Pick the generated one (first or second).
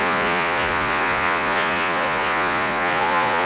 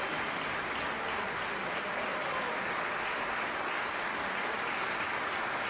first